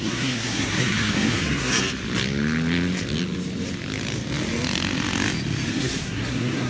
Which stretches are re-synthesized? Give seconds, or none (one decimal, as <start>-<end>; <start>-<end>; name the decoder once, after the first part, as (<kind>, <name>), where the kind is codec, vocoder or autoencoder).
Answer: 0.0-1.7 (codec, SNAC); 5.7-6.7